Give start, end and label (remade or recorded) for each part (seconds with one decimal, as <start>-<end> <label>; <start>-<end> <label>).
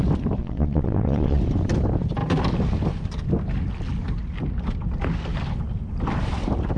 0.0-0.4 recorded; 0.4-1.4 remade; 1.4-6.8 recorded